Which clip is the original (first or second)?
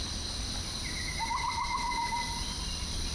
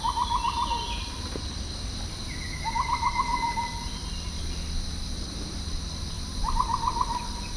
second